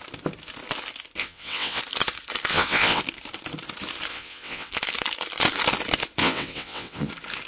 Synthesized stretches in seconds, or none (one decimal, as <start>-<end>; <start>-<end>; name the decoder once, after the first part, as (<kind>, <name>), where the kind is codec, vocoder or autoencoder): 1.2-1.8 (vocoder, WaveNeXt); 2.5-3.0; 4.1-4.7; 6.2-7.1